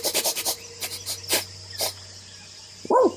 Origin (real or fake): real